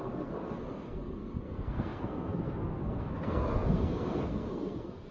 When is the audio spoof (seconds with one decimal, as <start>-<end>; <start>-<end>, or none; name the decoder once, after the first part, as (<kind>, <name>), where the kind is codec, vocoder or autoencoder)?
0.0-5.1 (codec, SNAC)